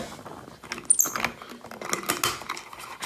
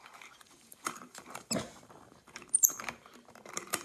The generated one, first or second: second